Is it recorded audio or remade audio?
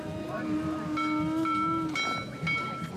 recorded